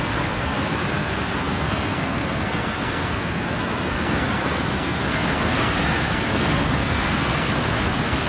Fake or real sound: fake